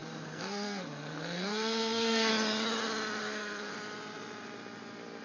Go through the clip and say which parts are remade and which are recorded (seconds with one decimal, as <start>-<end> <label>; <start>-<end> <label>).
0.0-2.3 remade; 2.3-3.2 recorded; 3.2-3.7 remade; 3.7-5.2 recorded